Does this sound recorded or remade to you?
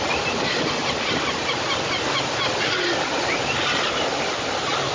recorded